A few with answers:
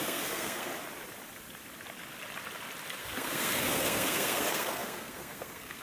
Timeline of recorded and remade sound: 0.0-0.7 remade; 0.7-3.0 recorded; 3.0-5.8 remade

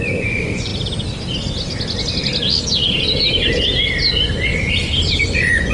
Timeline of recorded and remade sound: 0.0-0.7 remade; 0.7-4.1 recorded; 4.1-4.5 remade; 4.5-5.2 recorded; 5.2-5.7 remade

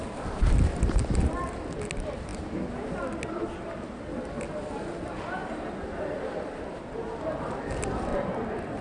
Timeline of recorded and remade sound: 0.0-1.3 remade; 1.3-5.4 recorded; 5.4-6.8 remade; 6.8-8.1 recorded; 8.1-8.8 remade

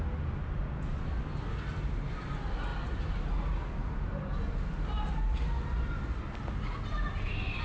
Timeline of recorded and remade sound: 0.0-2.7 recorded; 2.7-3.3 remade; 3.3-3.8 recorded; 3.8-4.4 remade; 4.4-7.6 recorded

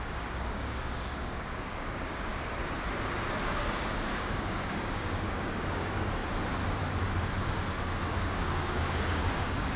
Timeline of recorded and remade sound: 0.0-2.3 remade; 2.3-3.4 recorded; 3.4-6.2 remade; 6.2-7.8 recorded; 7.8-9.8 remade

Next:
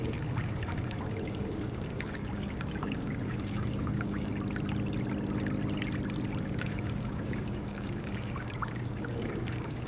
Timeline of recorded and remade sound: 0.0-4.3 remade; 4.3-6.4 recorded; 6.4-9.9 remade

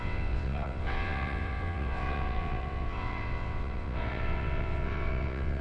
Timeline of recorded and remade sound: 0.0-5.6 remade